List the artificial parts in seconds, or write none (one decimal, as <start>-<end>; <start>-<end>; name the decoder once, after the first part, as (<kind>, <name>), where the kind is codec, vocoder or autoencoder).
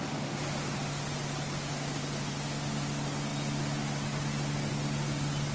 none